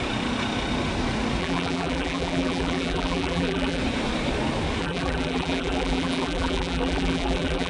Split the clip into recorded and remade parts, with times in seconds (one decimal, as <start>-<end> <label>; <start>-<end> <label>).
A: 0.0-1.4 recorded; 1.4-3.8 remade; 3.8-4.8 recorded; 4.8-7.7 remade